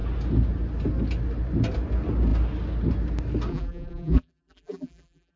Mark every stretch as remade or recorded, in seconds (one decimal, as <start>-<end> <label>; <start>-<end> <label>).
0.0-3.5 recorded; 3.5-5.4 remade